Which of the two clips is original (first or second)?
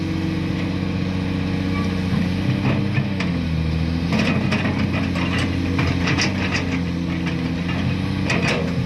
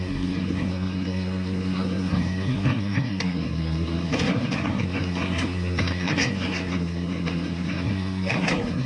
first